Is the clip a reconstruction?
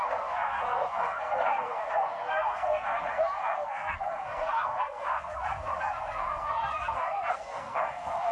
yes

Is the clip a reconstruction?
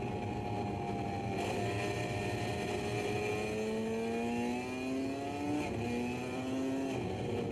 no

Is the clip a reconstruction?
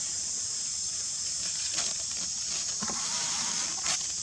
no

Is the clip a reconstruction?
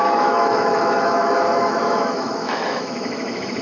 yes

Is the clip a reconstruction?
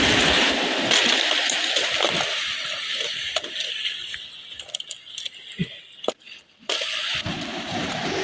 yes